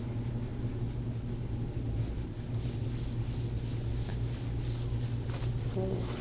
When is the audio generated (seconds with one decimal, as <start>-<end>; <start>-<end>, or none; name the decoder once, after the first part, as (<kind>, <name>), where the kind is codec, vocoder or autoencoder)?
none